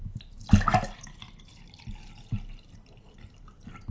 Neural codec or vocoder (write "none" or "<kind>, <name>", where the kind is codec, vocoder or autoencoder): none